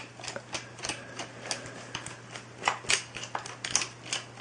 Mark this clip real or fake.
real